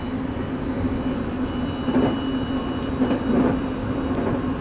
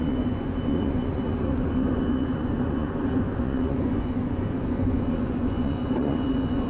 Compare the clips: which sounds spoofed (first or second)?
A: second